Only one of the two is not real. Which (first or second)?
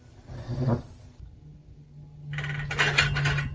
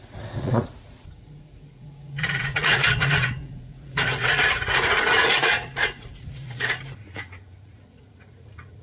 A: second